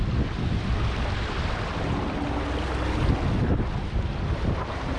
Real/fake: real